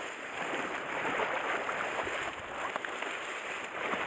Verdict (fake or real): real